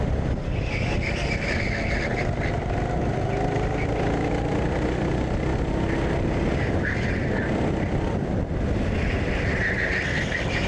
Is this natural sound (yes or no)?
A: yes